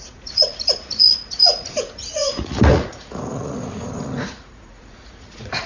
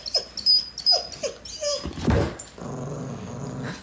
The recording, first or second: second